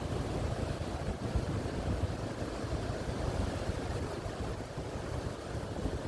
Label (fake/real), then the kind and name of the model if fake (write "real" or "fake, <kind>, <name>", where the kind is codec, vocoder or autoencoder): real